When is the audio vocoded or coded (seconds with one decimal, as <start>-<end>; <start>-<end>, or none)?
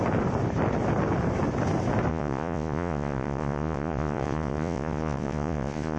2.1-6.0